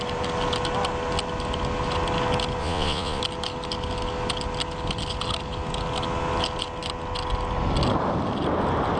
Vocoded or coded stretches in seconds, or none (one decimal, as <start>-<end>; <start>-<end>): 2.6-3.2